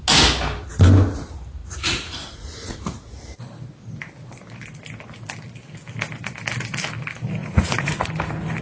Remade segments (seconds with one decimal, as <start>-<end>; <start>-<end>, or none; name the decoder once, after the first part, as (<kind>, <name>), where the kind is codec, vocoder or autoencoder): 1.6-3.2 (vocoder, Vocos); 7.4-8.1